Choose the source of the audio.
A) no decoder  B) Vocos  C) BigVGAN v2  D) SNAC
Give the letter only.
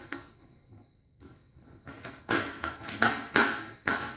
D